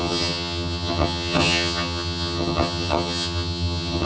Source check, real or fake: fake